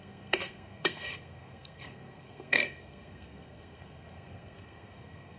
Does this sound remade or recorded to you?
remade